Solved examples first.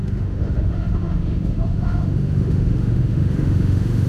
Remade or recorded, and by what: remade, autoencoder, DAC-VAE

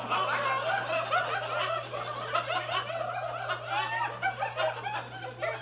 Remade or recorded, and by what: recorded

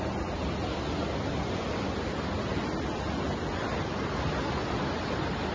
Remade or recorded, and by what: recorded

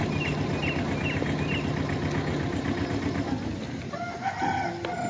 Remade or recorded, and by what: recorded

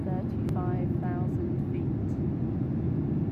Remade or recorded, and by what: recorded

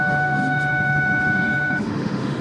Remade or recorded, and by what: remade, autoencoder, DAC-VAE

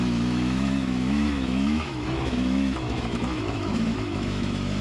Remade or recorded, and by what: remade, autoencoder, DAC-VAE